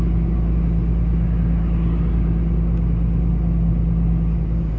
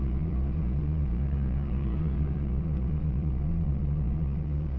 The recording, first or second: first